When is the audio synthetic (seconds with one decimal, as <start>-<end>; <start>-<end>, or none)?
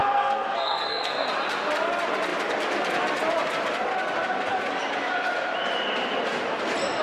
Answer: 0.0-1.3